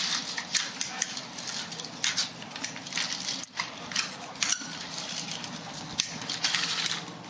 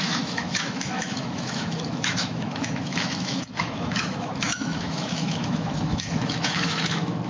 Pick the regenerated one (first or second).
second